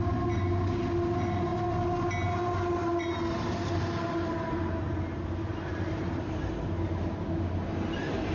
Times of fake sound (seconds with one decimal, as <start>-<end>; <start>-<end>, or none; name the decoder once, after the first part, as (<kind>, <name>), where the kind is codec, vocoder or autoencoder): none